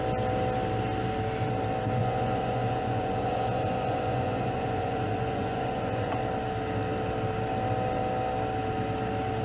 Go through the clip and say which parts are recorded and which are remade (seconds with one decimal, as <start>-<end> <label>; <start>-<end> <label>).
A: 0.0-2.0 recorded; 2.0-6.2 remade; 6.2-9.4 recorded